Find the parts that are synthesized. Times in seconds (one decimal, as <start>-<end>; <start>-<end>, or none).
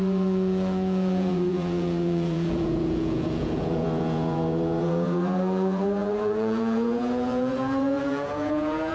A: 0.0-8.9